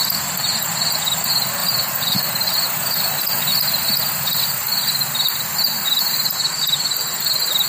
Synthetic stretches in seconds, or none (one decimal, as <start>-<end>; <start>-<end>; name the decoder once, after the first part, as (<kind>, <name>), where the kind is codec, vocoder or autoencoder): 1.6-3.5 (vocoder, BigVGAN v2); 5.5-6.4